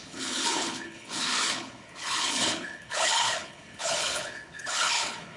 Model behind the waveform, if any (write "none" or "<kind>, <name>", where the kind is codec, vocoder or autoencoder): codec, HILCodec